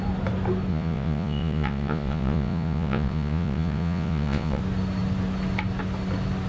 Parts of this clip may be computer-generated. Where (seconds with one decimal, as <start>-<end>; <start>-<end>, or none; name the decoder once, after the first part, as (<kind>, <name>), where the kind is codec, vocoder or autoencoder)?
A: 0.7-4.6 (vocoder, Vocos)